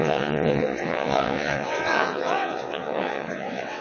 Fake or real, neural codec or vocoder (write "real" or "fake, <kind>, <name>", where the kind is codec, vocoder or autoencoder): fake, vocoder, WaveNeXt